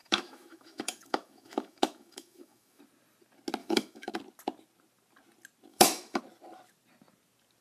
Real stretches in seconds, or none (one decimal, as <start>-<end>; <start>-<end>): 2.8-3.6; 4.1-5.7; 6.2-7.6